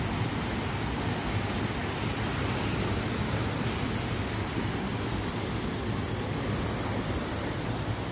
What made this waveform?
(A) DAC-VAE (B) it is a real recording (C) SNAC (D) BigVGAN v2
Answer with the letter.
B